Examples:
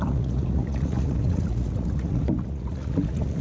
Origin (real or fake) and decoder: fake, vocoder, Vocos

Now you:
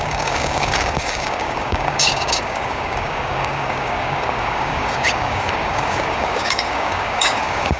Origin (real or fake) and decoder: fake, codec, DAC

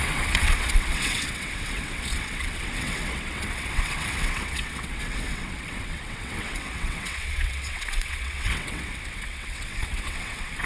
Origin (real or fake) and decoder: fake, vocoder, WaveNeXt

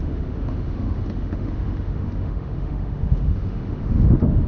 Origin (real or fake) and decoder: fake, autoencoder, DAC-VAE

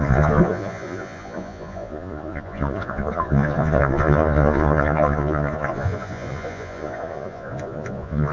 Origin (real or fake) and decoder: fake, vocoder, Vocos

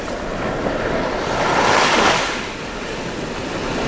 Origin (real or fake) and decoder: real